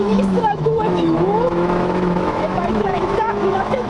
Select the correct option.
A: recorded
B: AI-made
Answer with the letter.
B